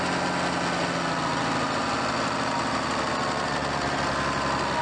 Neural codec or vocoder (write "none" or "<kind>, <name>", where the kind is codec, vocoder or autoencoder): none